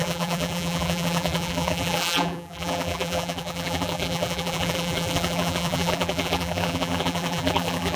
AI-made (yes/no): yes